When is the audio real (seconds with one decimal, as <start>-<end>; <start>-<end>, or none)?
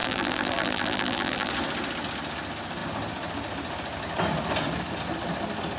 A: 1.5-5.8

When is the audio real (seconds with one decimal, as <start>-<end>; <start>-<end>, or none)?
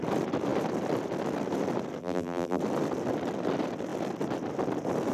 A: 0.0-2.0; 2.6-5.1